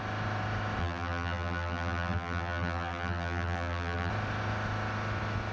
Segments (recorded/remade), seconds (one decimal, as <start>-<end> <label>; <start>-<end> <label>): 0.0-0.8 recorded; 0.8-4.1 remade; 4.1-5.5 recorded